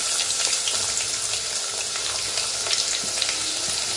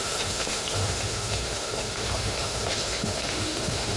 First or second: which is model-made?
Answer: second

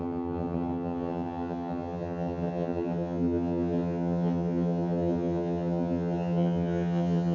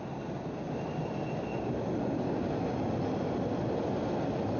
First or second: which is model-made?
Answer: first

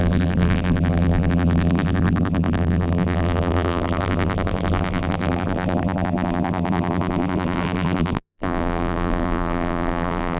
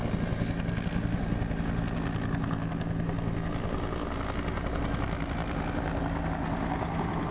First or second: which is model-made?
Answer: first